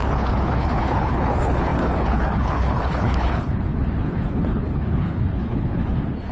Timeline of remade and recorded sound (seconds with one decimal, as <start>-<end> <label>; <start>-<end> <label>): 0.0-6.3 remade